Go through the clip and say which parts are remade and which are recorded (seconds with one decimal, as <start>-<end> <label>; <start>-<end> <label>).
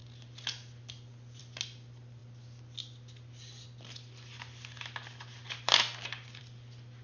0.0-7.0 recorded